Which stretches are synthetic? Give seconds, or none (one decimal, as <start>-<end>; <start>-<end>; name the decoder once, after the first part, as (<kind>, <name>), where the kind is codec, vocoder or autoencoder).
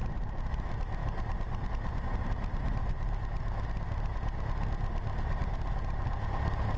0.0-0.5 (vocoder, BigVGAN v2); 1.0-1.7; 2.5-3.2